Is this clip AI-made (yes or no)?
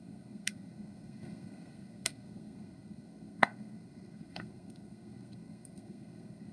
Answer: yes